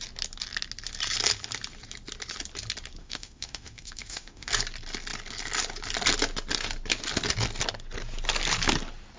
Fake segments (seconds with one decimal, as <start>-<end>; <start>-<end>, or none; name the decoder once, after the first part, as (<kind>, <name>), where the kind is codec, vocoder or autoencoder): 3.0-4.5 (autoencoder, DAC-VAE)